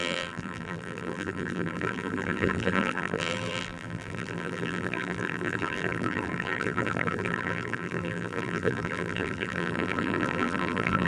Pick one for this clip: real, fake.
fake